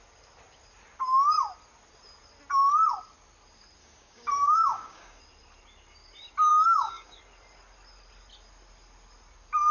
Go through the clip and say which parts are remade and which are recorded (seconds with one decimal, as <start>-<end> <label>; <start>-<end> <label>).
0.0-3.8 recorded; 3.8-5.2 remade; 5.2-6.5 recorded; 6.5-7.2 remade; 7.2-9.7 recorded